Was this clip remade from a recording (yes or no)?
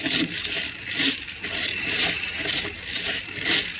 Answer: no